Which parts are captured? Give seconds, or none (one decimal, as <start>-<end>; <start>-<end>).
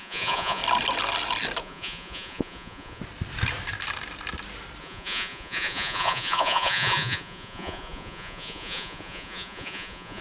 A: 0.6-1.6; 3.0-4.8